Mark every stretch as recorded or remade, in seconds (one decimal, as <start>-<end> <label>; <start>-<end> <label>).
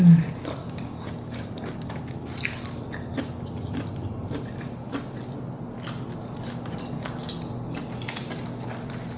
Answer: 0.0-0.6 recorded; 0.6-1.9 remade; 1.9-9.2 recorded